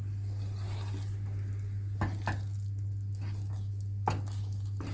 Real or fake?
real